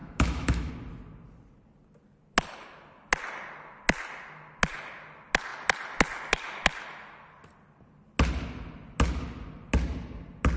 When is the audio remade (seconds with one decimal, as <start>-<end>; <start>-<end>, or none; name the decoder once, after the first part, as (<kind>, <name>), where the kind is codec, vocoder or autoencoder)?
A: 0.0-0.7 (autoencoder, DAC-VAE)